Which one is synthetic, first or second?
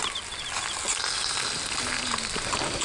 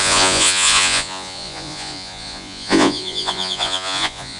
second